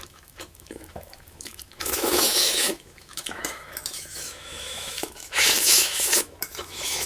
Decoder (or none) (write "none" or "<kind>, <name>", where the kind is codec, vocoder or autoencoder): autoencoder, DAC-VAE